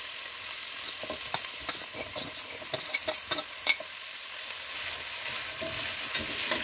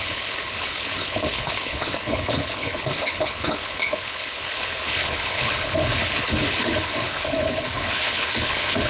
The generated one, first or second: second